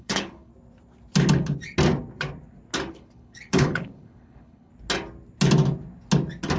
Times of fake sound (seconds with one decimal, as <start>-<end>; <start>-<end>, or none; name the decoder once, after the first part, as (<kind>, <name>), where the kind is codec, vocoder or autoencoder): 0.0-0.5 (codec, HILCodec); 2.9-4.7